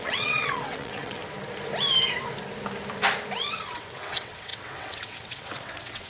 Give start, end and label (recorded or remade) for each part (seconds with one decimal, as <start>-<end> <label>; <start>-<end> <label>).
0.0-1.2 remade; 1.2-3.7 recorded; 3.7-6.1 remade